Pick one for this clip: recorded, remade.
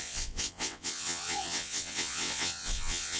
remade